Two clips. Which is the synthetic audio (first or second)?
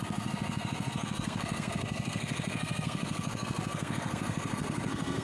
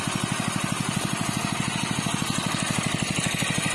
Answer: first